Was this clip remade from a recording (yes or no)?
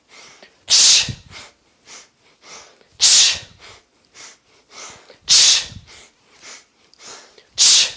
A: no